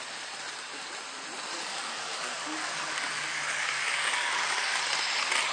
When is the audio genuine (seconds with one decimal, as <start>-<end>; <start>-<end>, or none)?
0.0-1.5; 4.8-5.5